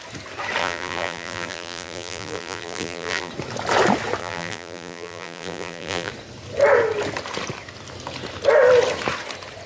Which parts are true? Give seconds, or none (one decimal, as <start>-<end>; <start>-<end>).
0.0-0.6; 3.3-4.2; 6.1-9.7